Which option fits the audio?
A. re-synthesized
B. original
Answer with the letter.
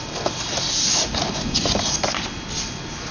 B